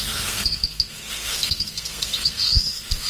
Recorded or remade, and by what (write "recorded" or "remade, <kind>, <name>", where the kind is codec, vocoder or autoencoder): remade, codec, SNAC